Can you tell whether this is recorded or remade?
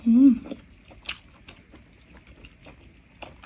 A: recorded